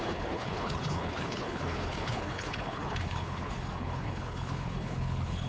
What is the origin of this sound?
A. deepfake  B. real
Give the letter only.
A